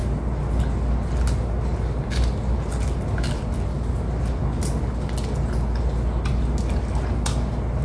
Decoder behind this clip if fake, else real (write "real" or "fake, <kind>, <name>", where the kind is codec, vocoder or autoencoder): real